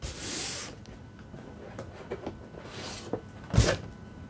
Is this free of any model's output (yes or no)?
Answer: yes